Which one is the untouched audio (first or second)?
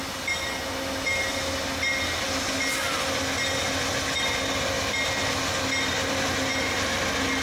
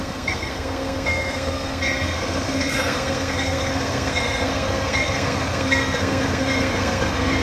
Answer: first